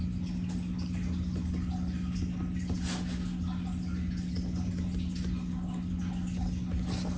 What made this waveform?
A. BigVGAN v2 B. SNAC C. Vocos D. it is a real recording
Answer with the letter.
D